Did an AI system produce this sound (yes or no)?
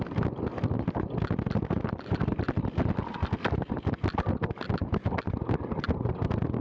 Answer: no